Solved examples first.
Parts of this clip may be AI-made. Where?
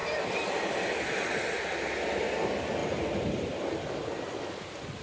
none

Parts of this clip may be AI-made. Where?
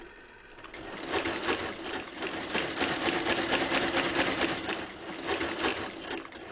0.7-2.6 (vocoder, BigVGAN v2); 5.7-6.5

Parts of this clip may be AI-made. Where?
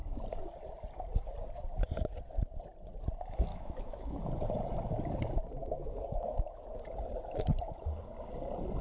3.5-4.2 (autoencoder, DAC-VAE); 5.6-6.8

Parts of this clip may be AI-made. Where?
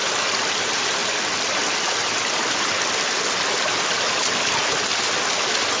none